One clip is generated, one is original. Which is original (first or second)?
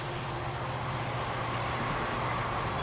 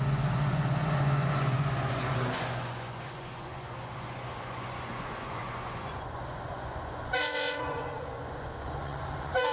first